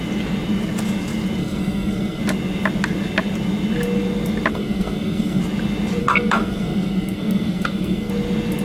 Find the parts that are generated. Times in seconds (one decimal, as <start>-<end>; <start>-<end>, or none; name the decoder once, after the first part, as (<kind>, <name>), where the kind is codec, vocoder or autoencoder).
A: 1.4-2.2 (codec, SNAC); 4.5-5.4; 6.0-8.1